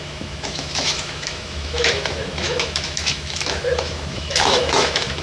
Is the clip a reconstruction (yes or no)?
yes